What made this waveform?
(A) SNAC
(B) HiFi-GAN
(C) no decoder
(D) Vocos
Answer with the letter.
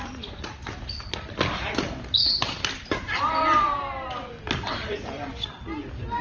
C